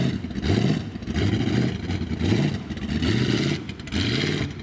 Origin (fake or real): fake